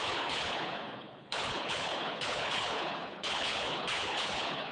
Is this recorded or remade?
remade